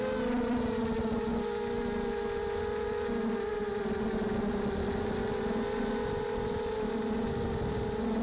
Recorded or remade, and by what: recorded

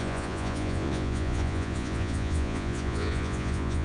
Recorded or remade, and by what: remade, vocoder, Vocos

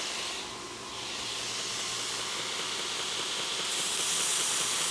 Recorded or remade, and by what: recorded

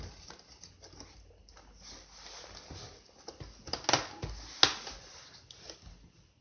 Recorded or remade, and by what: recorded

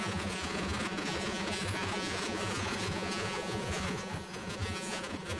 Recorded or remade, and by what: remade, vocoder, Vocos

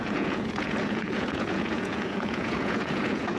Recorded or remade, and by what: remade, vocoder, Vocos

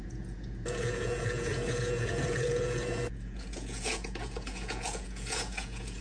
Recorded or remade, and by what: remade, vocoder, Vocos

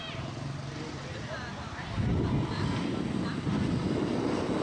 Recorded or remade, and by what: recorded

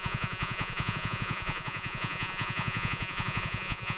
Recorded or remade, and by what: remade, vocoder, Vocos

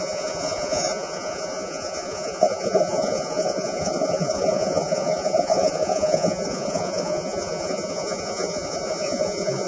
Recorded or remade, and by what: remade, vocoder, Vocos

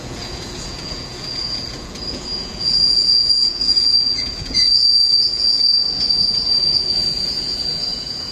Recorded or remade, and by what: remade, vocoder, Vocos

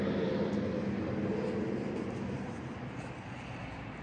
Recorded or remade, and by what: recorded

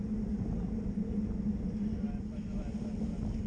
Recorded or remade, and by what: recorded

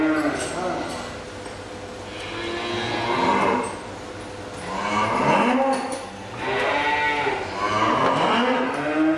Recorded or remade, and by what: recorded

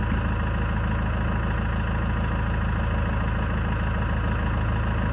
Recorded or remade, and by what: recorded